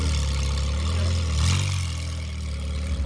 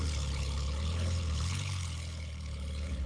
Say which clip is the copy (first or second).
second